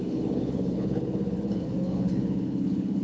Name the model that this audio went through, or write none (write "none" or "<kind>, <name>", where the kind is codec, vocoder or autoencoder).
codec, HILCodec